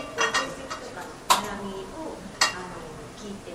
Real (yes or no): yes